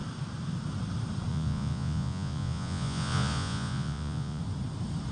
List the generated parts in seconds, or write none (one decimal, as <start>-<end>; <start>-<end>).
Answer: 1.3-4.4